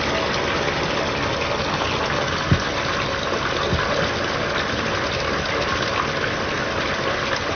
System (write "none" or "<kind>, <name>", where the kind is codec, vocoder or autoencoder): none